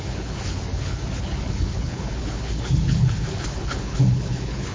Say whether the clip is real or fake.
fake